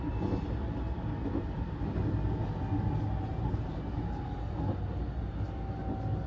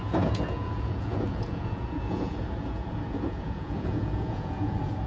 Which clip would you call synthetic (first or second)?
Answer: second